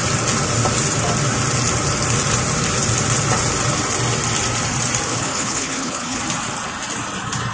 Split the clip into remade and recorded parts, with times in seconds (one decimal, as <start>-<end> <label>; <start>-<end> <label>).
0.0-5.1 recorded; 5.1-6.2 remade; 6.2-7.5 recorded